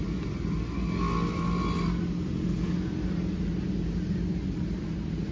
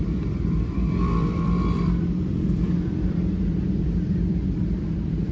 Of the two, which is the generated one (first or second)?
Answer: second